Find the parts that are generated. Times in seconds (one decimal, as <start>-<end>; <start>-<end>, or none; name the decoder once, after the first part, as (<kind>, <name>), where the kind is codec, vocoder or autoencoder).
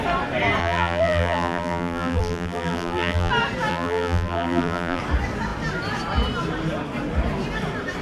0.6-3.3 (vocoder, BigVGAN v2); 3.7-5.0